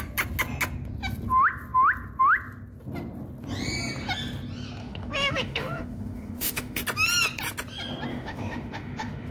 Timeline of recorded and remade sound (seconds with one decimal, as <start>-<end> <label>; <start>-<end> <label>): 0.0-4.8 recorded; 4.8-6.8 remade; 6.8-8.1 recorded; 8.1-9.3 remade